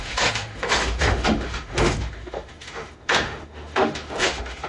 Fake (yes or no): yes